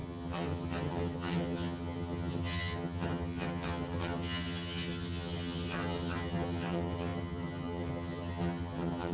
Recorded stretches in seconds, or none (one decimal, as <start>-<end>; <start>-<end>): none